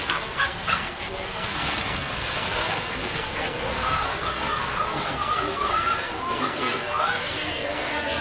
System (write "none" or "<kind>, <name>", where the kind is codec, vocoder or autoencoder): codec, SNAC